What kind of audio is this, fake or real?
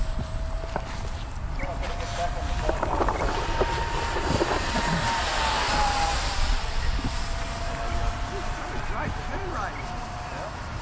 fake